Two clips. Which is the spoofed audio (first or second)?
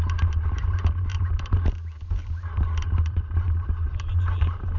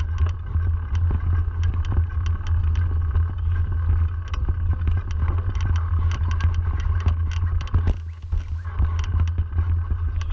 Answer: first